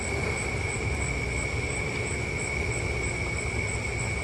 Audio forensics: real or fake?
real